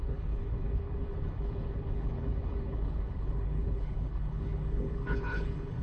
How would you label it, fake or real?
fake